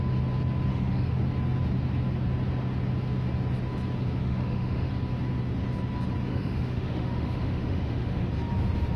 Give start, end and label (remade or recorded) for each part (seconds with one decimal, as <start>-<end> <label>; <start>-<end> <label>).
0.0-0.7 recorded; 0.7-1.2 remade; 1.2-4.2 recorded; 4.2-4.9 remade; 4.9-6.3 recorded; 6.3-8.3 remade; 8.3-9.0 recorded